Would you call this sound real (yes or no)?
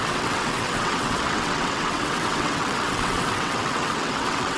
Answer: no